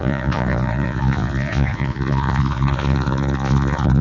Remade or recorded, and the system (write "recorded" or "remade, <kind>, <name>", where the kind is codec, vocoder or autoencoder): remade, vocoder, Vocos